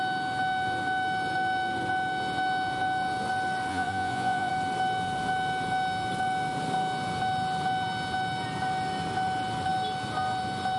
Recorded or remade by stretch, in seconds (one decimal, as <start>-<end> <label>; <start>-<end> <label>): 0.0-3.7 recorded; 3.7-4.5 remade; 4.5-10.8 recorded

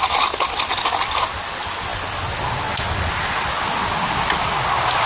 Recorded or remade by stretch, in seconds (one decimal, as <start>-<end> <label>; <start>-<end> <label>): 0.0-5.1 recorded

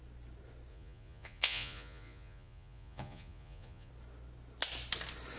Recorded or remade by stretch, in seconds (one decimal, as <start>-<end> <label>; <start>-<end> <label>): 0.0-0.7 recorded; 0.7-3.9 remade; 3.9-5.4 recorded

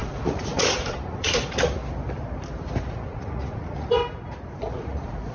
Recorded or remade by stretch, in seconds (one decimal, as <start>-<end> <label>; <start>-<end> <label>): 0.0-1.8 remade; 1.8-2.9 recorded; 2.9-4.0 remade; 4.0-4.7 recorded; 4.7-5.3 remade

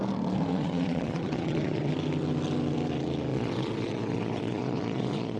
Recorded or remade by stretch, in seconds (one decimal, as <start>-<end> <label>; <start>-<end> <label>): 0.0-0.5 recorded; 0.5-1.9 remade; 1.9-3.3 recorded; 3.3-5.4 remade

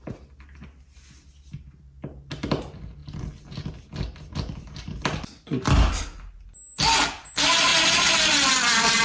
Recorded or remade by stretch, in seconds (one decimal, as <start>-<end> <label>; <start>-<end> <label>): 0.0-9.0 recorded